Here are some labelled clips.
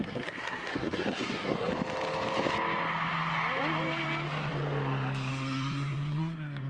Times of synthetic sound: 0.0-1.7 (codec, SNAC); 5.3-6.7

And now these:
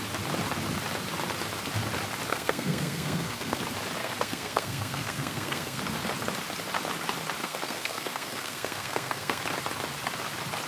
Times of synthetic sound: 2.3-3.6 (codec, SNAC); 4.0-5.8; 7.4-9.4

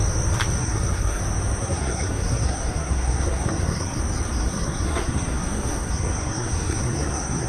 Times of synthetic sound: 0.6-1.2 (codec, SNAC); 1.6-4.0; 4.4-7.5

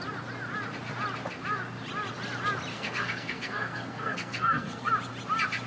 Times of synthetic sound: 2.7-4.9 (codec, SNAC)

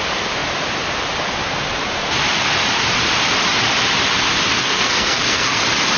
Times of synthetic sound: 4.6-5.6 (codec, SNAC)

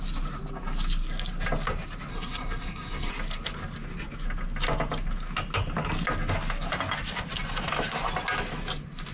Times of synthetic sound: 2.1-3.1 (codec, SNAC)

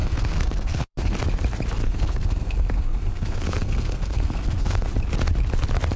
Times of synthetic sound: 0.0-1.1 (codec, SNAC); 1.8-4.9